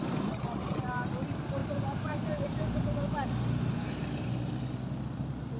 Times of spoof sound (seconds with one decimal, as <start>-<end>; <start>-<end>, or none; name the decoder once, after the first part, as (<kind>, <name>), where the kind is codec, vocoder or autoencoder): 1.6-4.6 (vocoder, BigVGAN v2)